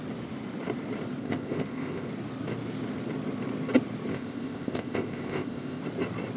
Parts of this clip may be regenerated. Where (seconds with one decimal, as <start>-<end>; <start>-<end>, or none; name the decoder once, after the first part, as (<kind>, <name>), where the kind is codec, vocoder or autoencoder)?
1.2-2.1 (codec, ZipCodec); 4.1-5.8